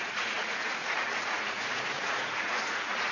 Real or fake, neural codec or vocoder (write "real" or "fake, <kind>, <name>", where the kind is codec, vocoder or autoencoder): fake, vocoder, Vocos